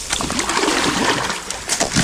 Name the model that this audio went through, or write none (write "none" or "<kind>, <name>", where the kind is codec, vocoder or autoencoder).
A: none